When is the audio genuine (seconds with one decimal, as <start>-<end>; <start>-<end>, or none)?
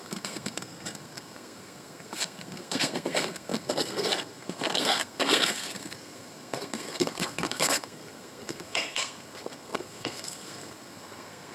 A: none